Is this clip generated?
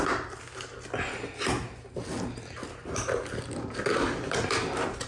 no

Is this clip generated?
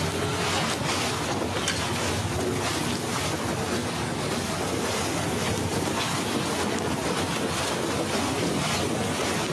no